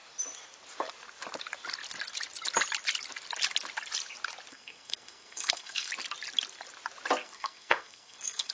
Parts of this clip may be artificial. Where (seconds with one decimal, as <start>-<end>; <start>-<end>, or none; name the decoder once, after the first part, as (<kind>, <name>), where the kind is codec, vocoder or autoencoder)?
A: 4.5-5.9 (codec, SNAC); 7.2-8.5